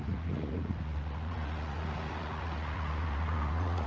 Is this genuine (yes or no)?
no